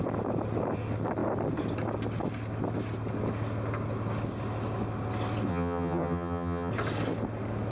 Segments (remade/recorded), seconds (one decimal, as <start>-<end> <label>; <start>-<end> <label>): 0.0-5.5 recorded; 5.5-6.7 remade; 6.7-7.7 recorded